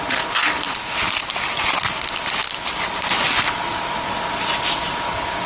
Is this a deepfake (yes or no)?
no